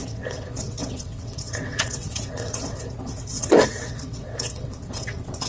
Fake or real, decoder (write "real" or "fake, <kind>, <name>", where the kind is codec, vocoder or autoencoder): fake, vocoder, WaveNeXt